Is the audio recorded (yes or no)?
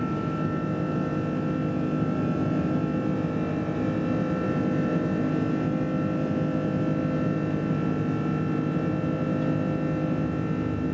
yes